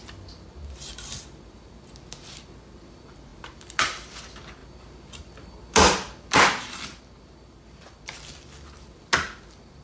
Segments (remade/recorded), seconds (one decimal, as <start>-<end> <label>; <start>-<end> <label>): 0.0-9.8 recorded